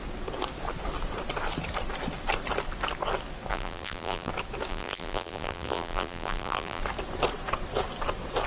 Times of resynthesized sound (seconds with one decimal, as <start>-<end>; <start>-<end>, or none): 3.5-4.3; 4.7-6.8